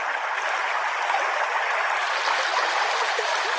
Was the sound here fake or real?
real